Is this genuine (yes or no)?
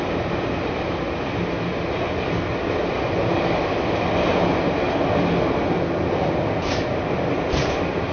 yes